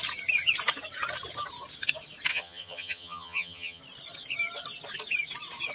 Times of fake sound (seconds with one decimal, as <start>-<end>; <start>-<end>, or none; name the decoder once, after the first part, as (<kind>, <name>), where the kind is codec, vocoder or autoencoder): 2.3-3.8 (vocoder, HiFi-GAN)